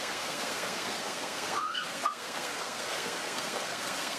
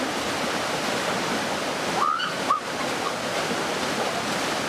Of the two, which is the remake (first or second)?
first